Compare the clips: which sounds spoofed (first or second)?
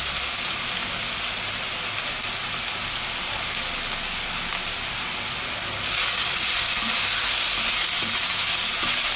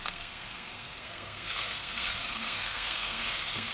second